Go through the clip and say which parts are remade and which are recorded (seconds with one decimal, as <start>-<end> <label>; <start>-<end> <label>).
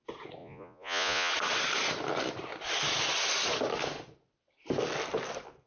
0.0-0.4 recorded; 0.4-1.3 remade; 1.3-5.7 recorded